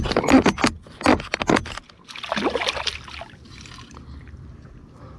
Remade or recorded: recorded